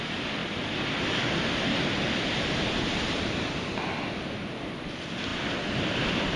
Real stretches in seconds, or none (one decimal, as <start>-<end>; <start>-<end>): 0.0-6.4